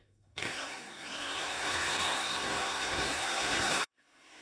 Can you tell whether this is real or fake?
fake